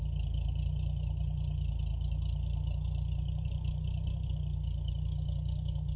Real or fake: real